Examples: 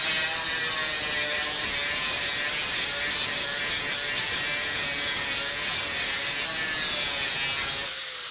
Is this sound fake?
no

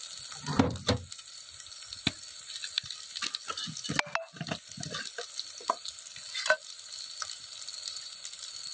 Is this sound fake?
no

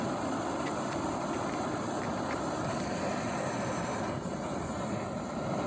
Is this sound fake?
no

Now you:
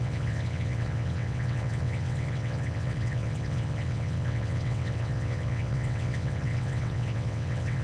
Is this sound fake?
yes